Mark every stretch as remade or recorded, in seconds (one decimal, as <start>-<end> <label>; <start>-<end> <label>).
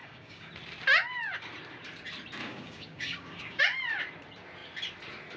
0.0-0.5 remade; 0.5-2.4 recorded; 2.4-3.6 remade; 3.6-5.4 recorded